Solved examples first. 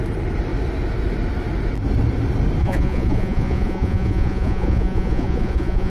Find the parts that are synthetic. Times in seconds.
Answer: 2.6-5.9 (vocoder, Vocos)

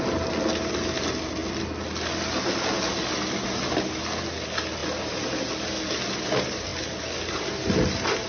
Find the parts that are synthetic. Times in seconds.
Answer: none